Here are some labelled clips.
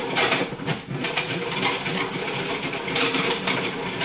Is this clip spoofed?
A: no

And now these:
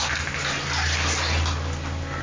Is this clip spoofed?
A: no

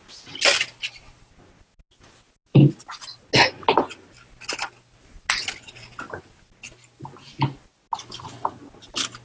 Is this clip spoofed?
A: no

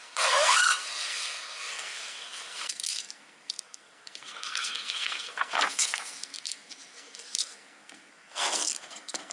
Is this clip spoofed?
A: yes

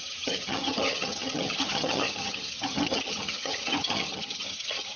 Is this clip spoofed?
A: yes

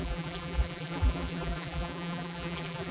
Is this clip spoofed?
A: yes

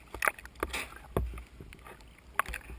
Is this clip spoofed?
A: no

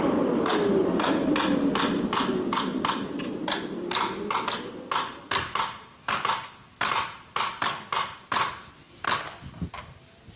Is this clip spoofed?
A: no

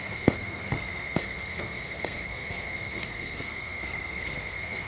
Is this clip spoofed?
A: yes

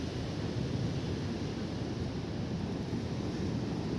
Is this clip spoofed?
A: no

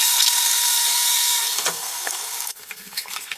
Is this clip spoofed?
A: yes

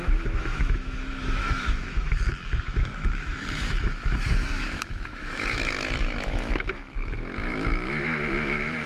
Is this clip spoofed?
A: yes